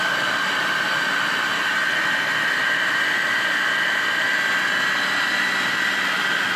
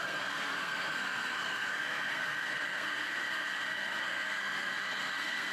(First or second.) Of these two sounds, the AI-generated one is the second